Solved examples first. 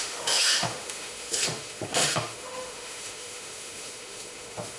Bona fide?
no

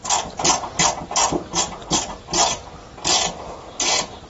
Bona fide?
yes